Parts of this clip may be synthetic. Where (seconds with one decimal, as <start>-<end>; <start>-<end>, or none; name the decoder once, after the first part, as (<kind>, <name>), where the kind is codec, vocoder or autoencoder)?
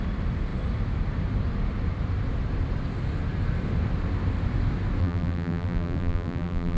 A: 5.0-6.8 (vocoder, BigVGAN v2)